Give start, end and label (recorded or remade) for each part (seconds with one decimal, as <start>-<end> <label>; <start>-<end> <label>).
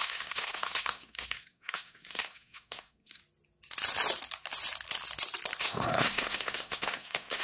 0.0-3.2 remade; 3.2-5.6 recorded; 5.6-7.4 remade